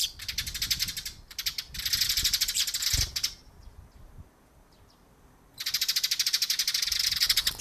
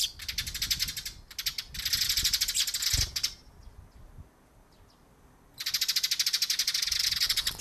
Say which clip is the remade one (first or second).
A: first